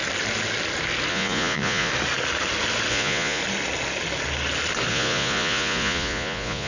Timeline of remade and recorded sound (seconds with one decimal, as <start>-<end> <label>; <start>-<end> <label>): 0.0-1.1 recorded; 1.1-1.9 remade; 1.9-2.9 recorded; 2.9-3.4 remade; 3.4-4.9 recorded; 4.9-6.7 remade